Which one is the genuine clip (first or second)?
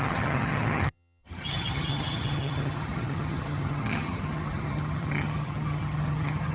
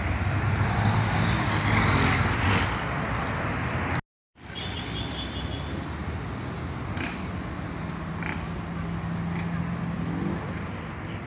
second